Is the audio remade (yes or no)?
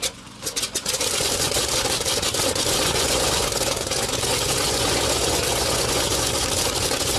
yes